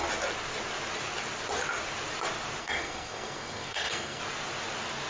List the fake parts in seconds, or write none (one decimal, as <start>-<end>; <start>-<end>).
2.6-4.2